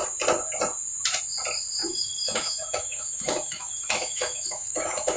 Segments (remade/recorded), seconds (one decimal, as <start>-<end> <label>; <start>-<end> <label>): 0.0-1.8 recorded; 1.8-5.2 remade